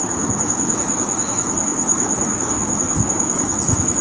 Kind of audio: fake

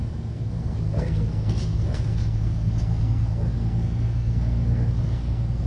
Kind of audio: fake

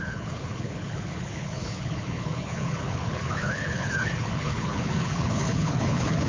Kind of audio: fake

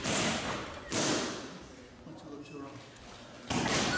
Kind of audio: real